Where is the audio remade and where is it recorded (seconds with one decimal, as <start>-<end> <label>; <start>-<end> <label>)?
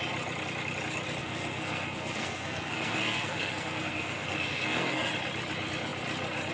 0.0-1.2 recorded; 1.2-5.1 remade; 5.1-6.5 recorded